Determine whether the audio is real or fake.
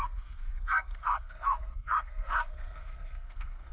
fake